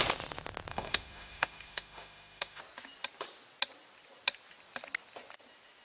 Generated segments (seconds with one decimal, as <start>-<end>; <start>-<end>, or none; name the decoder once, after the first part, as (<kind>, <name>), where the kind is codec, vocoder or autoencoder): 0.7-2.6 (autoencoder, DAC-VAE)